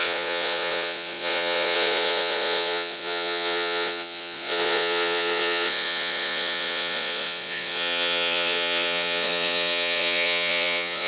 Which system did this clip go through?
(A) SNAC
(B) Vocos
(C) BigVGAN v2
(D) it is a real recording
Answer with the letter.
B